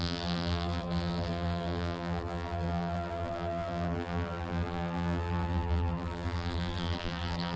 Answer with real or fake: fake